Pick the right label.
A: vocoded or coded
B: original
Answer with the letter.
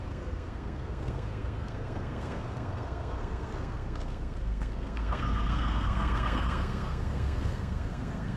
A